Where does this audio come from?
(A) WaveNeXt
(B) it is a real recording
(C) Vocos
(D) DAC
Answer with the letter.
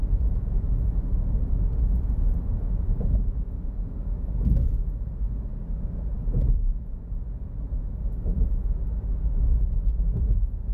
C